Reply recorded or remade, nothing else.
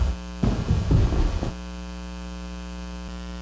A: recorded